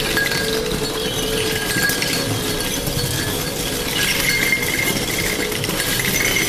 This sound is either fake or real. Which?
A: real